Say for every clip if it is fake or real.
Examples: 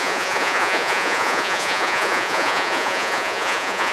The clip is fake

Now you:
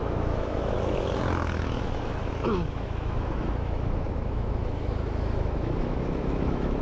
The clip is fake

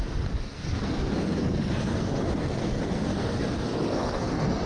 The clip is fake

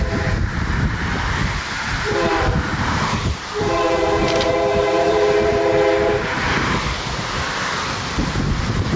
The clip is fake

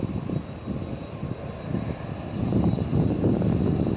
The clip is real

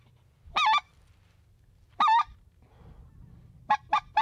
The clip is real